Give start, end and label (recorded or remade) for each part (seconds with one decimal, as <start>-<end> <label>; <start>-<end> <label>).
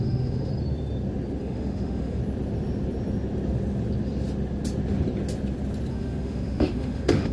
0.0-0.5 remade; 0.5-1.4 recorded; 1.4-2.2 remade; 2.2-5.9 recorded; 5.9-7.3 remade